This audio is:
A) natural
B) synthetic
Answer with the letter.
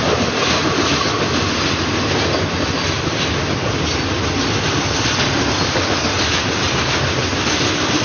A